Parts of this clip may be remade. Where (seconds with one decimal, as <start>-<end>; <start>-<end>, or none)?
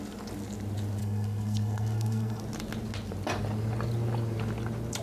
1.0-2.4